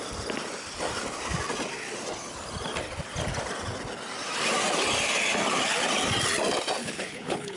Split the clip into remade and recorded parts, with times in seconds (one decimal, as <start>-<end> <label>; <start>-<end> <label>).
0.0-6.8 recorded; 6.8-7.6 remade